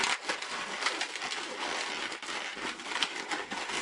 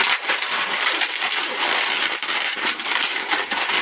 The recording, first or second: first